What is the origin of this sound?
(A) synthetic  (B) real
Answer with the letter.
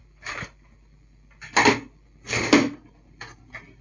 B